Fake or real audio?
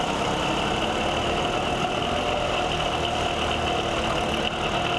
real